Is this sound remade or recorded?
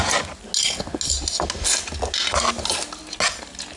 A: recorded